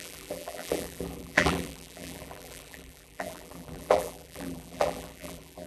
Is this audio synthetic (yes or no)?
yes